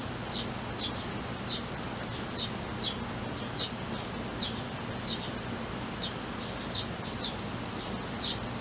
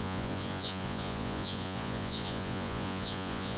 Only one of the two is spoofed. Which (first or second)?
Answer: second